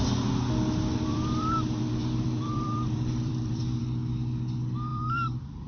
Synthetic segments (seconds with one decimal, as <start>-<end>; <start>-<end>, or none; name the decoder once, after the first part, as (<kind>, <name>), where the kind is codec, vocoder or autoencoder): 1.1-3.8 (vocoder, BigVGAN v2); 4.9-5.7